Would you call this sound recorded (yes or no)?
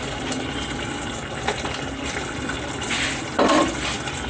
yes